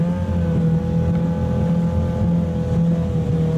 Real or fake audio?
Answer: real